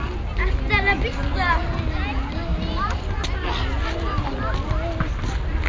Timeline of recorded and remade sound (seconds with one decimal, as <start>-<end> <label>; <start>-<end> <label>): 0.0-5.7 recorded